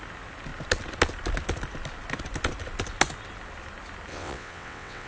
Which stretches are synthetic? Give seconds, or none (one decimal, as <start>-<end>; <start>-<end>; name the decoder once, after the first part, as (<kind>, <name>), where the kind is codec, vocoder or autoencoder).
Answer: 4.1-5.1 (vocoder, WaveNeXt)